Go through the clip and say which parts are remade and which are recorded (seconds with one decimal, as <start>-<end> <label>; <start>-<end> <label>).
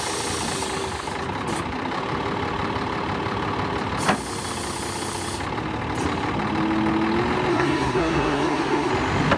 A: 0.0-7.5 recorded; 7.5-8.9 remade; 8.9-9.4 recorded